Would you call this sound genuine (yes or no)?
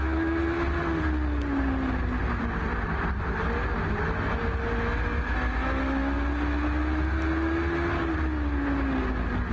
yes